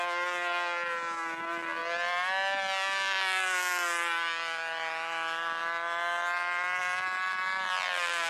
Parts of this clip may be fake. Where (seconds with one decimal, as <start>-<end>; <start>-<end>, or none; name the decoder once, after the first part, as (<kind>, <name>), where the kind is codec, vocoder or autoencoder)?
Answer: none